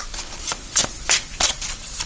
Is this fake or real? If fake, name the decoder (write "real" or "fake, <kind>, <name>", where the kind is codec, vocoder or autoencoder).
real